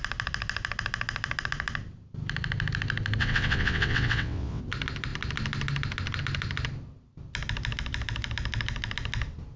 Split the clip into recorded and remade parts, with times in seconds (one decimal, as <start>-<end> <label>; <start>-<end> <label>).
0.0-3.2 recorded; 3.2-4.6 remade; 4.6-9.6 recorded